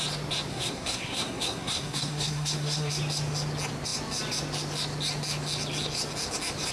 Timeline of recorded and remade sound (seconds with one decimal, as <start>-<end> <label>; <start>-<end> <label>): 0.0-0.5 recorded; 0.5-2.9 remade; 2.9-6.7 recorded

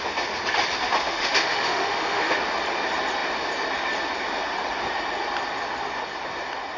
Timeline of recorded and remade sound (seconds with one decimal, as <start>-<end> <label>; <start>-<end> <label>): 0.0-1.0 recorded; 1.0-2.4 remade; 2.4-6.8 recorded

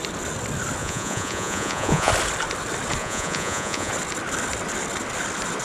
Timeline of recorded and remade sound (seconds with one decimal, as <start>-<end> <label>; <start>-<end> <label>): 0.0-0.8 recorded; 0.8-2.1 remade; 2.1-3.0 recorded; 3.0-3.9 remade; 3.9-5.6 recorded

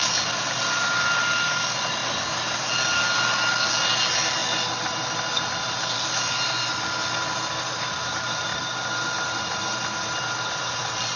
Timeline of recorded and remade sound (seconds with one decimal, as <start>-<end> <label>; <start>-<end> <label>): 0.0-11.2 recorded

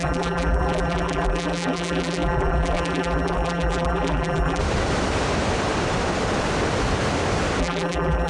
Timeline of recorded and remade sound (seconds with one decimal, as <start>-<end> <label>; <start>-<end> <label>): 0.0-4.6 remade; 4.6-7.6 recorded; 7.6-8.3 remade

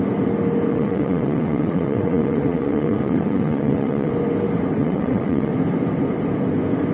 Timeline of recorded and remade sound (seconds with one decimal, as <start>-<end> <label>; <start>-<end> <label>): 0.0-0.7 recorded; 0.7-4.1 remade; 4.1-4.8 recorded; 4.8-5.5 remade; 5.5-6.9 recorded

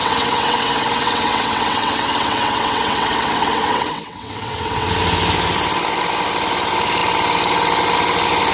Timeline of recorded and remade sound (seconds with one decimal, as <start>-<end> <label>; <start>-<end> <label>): 0.0-4.9 remade; 4.9-8.5 recorded